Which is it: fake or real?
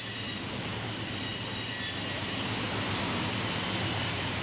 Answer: real